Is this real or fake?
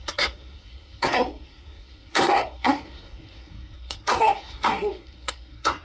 fake